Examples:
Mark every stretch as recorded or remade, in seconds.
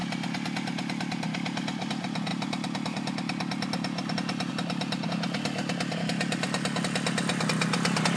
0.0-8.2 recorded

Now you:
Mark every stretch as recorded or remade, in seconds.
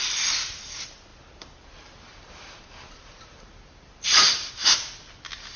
0.0-1.1 recorded; 1.1-4.5 remade; 4.5-5.6 recorded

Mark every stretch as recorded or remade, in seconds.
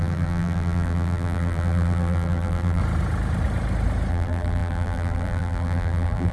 0.0-2.8 remade; 2.8-4.1 recorded; 4.1-6.3 remade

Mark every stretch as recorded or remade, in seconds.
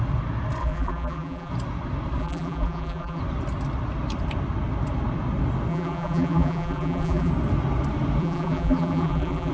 0.0-0.6 recorded; 0.6-1.5 remade; 1.5-2.2 recorded; 2.2-3.2 remade; 3.2-5.7 recorded; 5.7-7.3 remade; 7.3-8.2 recorded; 8.2-9.5 remade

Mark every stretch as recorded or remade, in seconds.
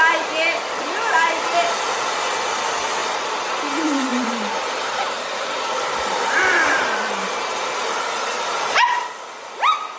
0.0-3.0 recorded; 3.0-3.6 remade; 3.6-4.1 recorded; 4.1-9.1 remade; 9.1-10.0 recorded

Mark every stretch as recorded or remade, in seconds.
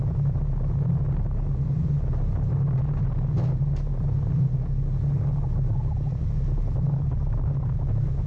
0.0-8.3 recorded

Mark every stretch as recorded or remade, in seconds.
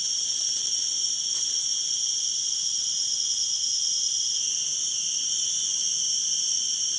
0.0-1.1 remade; 1.1-5.7 recorded; 5.7-6.6 remade; 6.6-7.0 recorded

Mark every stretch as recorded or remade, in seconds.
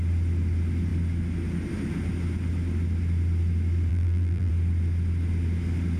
0.0-3.9 recorded; 3.9-4.5 remade; 4.5-6.0 recorded